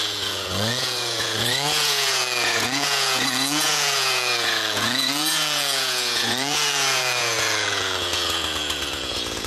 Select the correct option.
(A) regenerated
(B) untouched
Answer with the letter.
A